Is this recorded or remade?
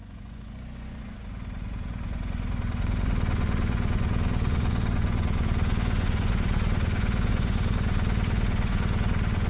remade